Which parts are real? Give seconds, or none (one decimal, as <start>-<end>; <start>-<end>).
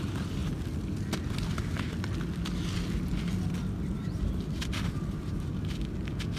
0.0-6.4